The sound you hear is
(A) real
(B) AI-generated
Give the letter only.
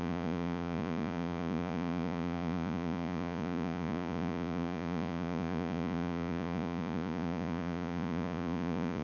B